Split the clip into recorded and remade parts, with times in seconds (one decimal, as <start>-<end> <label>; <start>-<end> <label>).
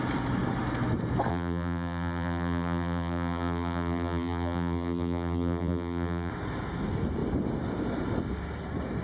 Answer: 0.0-1.3 recorded; 1.3-6.3 remade; 6.3-9.0 recorded